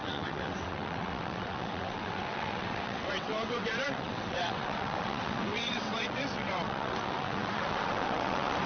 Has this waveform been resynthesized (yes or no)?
yes